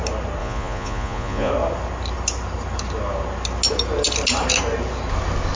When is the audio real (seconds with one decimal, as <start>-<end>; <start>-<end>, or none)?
0.0-0.4; 1.5-5.5